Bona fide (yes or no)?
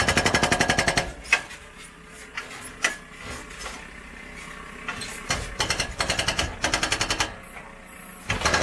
yes